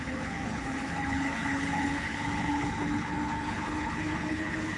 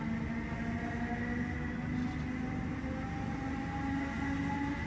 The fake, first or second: first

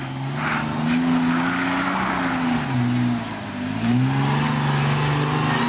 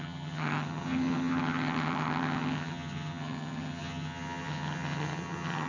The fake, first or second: second